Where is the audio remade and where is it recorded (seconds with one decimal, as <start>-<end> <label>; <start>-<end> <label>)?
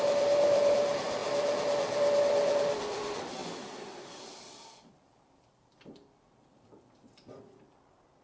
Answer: 0.0-3.4 recorded; 3.4-4.1 remade; 4.1-8.2 recorded